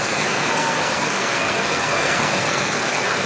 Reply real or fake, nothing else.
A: fake